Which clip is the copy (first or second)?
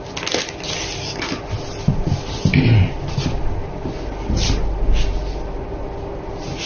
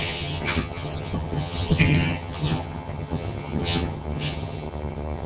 second